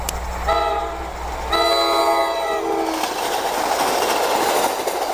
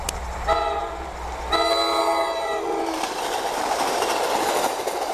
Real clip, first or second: first